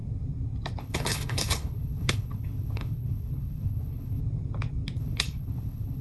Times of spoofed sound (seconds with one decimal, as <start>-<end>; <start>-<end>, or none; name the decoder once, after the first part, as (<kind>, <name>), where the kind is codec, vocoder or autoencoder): 0.8-4.2 (codec, HILCodec); 5.0-6.0